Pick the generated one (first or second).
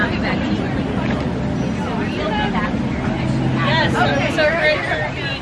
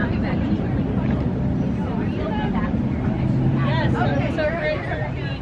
second